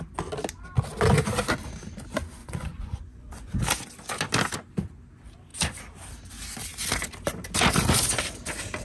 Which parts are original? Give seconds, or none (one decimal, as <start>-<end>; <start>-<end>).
0.0-2.4; 3.6-8.8